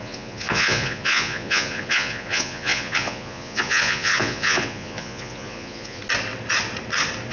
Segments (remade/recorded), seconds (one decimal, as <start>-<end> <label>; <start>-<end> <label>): 0.0-6.0 remade; 6.0-7.3 recorded